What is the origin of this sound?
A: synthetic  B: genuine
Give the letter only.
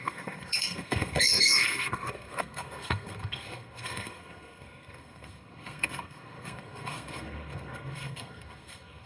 A